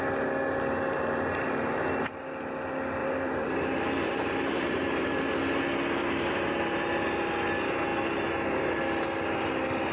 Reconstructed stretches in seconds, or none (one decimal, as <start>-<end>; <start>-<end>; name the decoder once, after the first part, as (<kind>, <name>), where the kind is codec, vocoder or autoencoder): 3.0-5.3 (vocoder, BigVGAN v2); 6.0-6.8